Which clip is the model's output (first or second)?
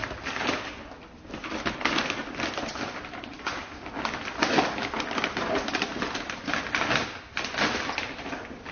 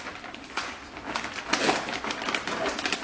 first